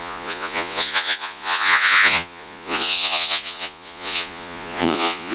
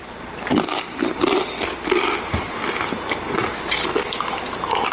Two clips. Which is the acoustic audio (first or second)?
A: second